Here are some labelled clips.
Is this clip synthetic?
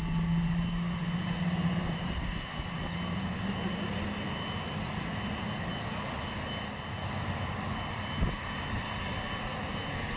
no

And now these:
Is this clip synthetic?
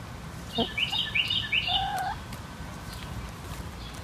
no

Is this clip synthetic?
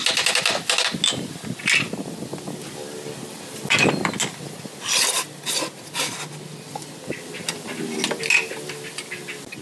no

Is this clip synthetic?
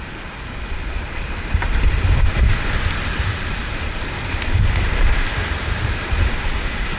yes